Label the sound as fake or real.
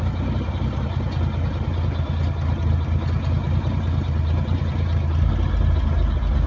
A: real